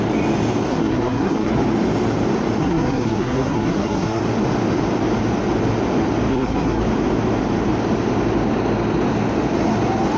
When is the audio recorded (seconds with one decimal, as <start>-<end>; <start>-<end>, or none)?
0.0-0.7; 1.5-2.6; 4.2-6.3; 6.8-10.2